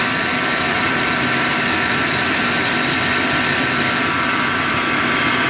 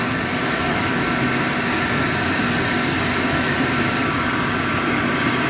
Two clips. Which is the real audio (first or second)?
first